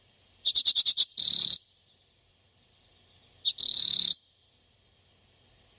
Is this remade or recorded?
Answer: recorded